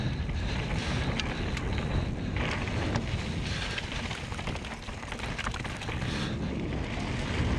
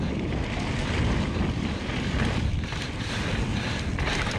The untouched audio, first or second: first